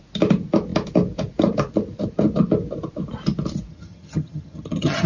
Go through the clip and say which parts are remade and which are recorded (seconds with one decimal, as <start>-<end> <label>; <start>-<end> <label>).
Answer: 0.0-3.7 recorded; 3.7-5.1 remade